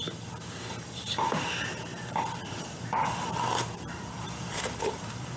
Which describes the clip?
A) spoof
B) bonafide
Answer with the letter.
A